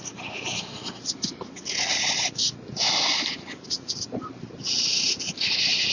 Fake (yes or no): no